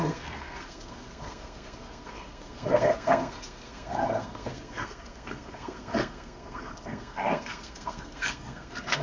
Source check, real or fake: fake